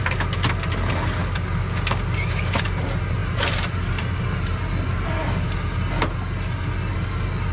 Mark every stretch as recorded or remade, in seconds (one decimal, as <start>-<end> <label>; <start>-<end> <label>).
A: 0.0-1.2 recorded; 1.2-2.6 remade; 2.6-7.5 recorded